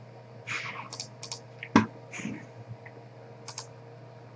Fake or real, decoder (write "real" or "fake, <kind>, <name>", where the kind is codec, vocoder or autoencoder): real